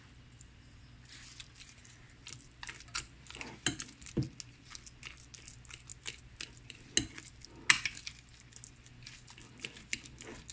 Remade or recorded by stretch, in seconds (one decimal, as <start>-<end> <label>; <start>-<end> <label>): 0.0-10.5 recorded